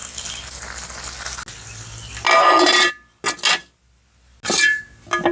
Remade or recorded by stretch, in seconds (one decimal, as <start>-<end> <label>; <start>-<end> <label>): 0.0-5.3 recorded